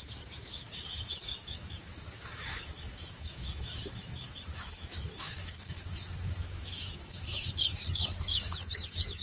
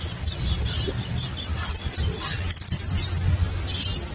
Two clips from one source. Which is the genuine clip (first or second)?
second